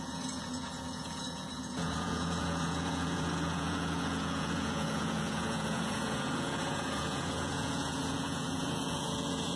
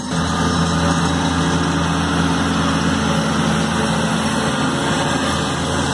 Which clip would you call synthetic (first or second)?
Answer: first